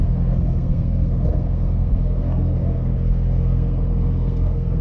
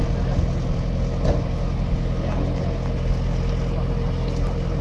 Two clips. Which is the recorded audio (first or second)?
second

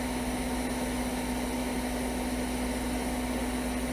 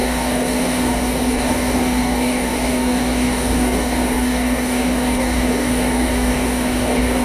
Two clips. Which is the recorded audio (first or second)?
first